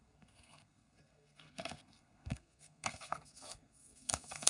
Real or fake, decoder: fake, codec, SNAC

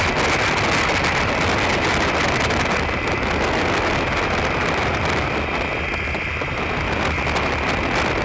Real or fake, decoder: real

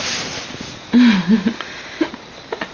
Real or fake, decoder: real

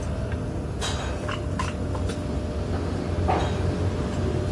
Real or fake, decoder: real